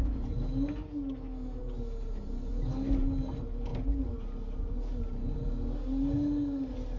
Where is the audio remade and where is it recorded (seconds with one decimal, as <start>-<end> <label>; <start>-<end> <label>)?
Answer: 0.0-7.0 recorded